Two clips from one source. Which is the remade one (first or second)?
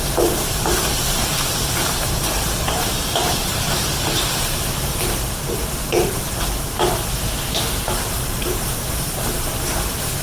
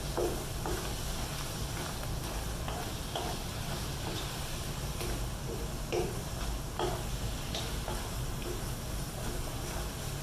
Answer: first